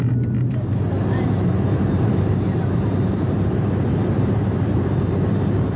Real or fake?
fake